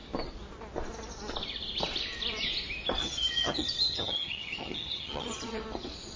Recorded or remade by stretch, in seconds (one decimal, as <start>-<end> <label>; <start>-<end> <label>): 0.0-3.0 recorded; 3.0-5.6 remade; 5.6-6.2 recorded